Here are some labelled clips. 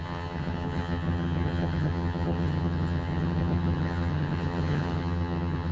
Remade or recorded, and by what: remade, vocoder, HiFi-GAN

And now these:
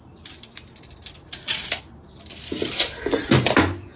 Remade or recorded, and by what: recorded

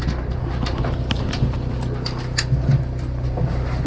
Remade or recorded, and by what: recorded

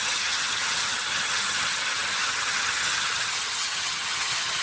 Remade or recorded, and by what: remade, vocoder, HiFi-GAN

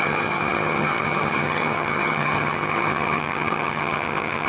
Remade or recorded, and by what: remade, vocoder, HiFi-GAN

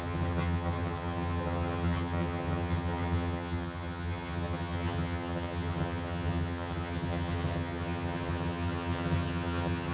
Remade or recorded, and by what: remade, vocoder, HiFi-GAN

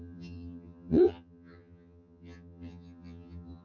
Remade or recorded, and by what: remade, vocoder, HiFi-GAN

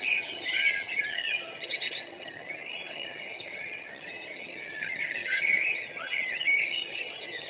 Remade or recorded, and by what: remade, vocoder, HiFi-GAN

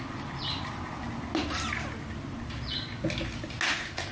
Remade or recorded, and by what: recorded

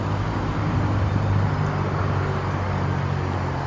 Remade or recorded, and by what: recorded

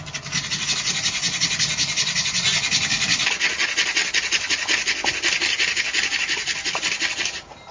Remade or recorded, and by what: recorded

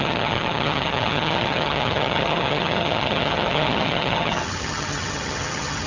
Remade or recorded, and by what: remade, vocoder, HiFi-GAN